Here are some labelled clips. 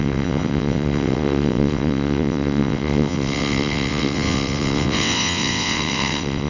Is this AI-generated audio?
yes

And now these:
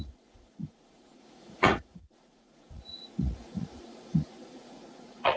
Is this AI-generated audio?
yes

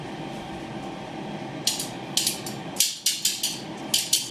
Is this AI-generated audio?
no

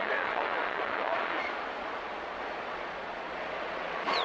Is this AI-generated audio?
yes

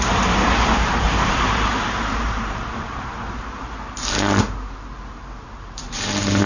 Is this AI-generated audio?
yes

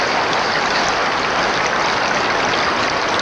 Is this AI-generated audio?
no